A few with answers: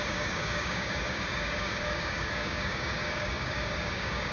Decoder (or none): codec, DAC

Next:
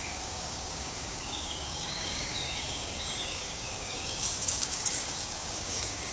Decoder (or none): codec, DAC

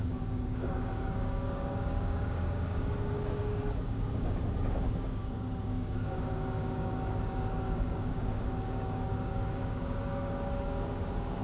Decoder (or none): codec, DAC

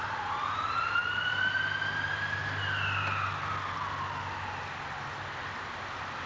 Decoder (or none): none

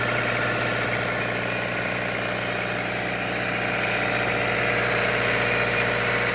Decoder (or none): none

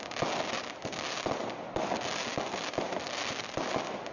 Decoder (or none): none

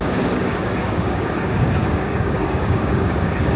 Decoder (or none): codec, DAC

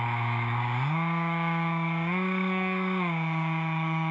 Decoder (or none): codec, DAC